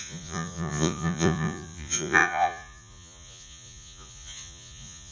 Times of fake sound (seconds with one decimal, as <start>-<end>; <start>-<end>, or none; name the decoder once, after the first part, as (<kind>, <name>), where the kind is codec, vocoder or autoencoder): 0.0-5.1 (vocoder, Vocos)